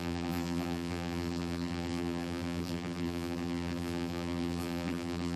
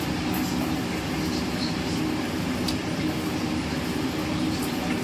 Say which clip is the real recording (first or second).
second